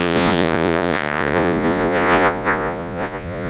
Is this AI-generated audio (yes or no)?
yes